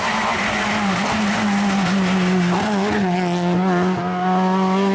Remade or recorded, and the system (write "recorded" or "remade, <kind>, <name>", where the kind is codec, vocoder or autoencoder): recorded